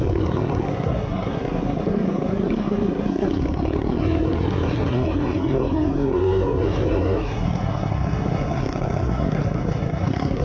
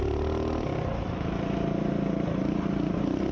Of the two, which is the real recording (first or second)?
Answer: second